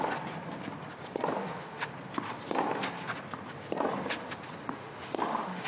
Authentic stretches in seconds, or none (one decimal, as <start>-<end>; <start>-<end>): 0.0-1.4; 1.9-4.6